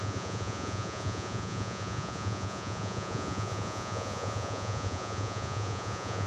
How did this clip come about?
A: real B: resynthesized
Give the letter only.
B